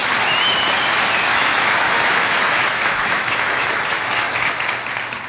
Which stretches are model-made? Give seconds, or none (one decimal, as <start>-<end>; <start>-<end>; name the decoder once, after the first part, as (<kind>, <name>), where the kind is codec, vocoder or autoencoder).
1.3-4.5 (autoencoder, DAC-VAE)